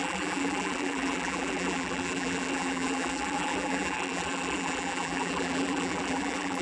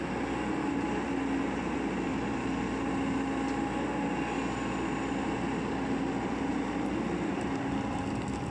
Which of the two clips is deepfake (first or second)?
first